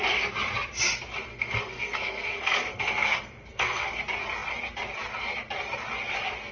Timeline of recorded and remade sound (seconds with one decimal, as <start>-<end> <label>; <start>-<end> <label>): 0.0-1.3 recorded; 1.3-4.0 remade; 4.0-6.5 recorded